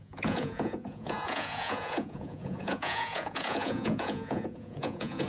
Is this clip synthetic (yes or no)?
yes